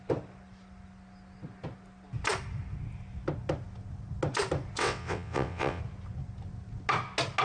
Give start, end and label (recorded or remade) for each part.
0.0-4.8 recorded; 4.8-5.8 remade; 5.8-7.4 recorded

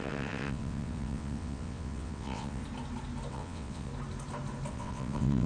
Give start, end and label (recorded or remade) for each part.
0.0-2.6 remade; 2.6-3.3 recorded; 3.3-3.9 remade; 3.9-4.7 recorded; 4.7-5.5 remade

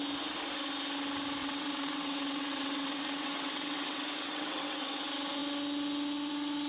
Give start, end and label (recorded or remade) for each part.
0.0-1.4 recorded; 1.4-5.0 remade; 5.0-6.7 recorded

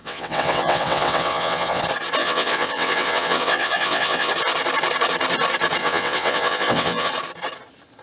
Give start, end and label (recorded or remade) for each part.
0.0-1.8 remade; 1.8-2.2 recorded; 2.2-4.3 remade; 4.3-5.8 recorded; 5.8-7.1 remade; 7.1-8.0 recorded

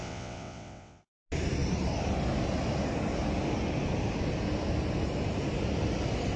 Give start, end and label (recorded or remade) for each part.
0.0-1.0 remade; 1.0-6.4 recorded

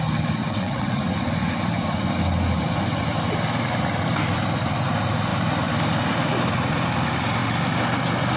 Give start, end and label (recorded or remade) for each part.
0.0-0.4 recorded; 0.4-1.0 remade; 1.0-8.4 recorded